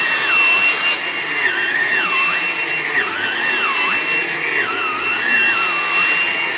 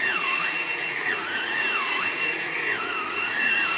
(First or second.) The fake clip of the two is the second